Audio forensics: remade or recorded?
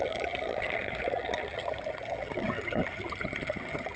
remade